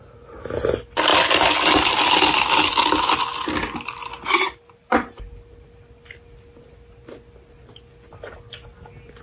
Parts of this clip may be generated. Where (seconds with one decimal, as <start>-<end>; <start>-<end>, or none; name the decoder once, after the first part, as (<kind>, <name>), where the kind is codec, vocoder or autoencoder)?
none